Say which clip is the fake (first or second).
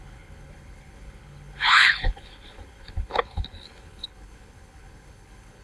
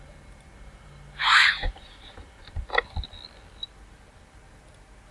first